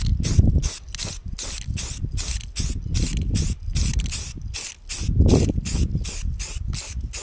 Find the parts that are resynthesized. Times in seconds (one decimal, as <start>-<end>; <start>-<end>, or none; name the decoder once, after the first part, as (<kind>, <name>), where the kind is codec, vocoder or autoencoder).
none